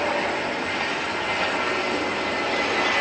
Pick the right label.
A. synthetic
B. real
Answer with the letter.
B